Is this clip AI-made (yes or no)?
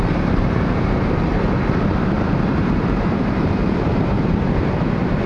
yes